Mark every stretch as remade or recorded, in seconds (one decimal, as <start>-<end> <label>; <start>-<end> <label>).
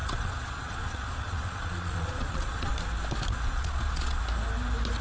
0.0-2.7 remade; 2.7-3.5 recorded; 3.5-4.2 remade; 4.2-5.0 recorded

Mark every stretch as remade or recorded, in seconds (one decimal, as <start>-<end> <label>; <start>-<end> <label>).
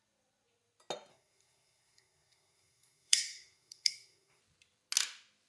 0.0-1.1 recorded; 1.1-4.4 remade; 4.4-5.5 recorded